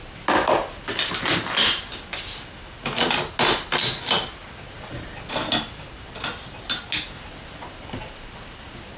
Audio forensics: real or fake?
real